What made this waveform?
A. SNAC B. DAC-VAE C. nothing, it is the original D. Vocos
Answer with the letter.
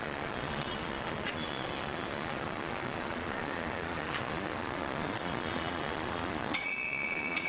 D